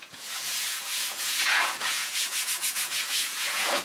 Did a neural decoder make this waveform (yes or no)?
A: yes